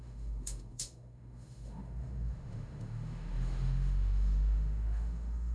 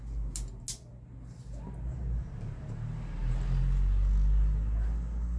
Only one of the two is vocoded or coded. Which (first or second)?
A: first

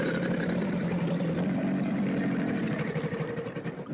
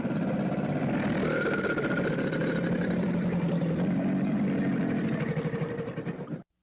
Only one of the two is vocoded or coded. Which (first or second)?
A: first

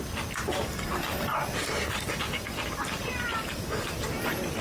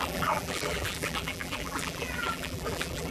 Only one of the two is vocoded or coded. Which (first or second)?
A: second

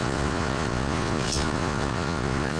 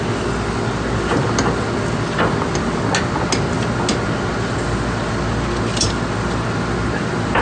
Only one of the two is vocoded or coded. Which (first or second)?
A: first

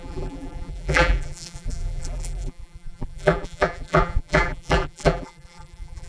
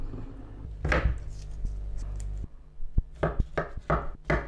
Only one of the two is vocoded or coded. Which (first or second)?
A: first